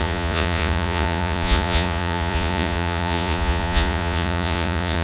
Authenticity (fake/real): fake